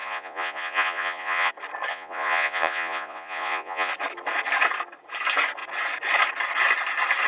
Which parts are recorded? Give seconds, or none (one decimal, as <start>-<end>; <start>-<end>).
1.5-1.9; 3.9-7.3